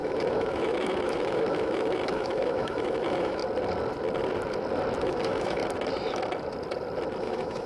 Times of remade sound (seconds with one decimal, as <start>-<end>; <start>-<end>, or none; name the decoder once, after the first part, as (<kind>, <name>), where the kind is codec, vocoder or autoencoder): 0.0-3.4 (autoencoder, DAC-VAE); 5.0-5.6; 7.2-7.7